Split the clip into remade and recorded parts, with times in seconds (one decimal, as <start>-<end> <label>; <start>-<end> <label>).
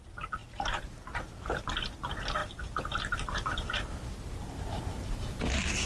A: 0.0-5.9 recorded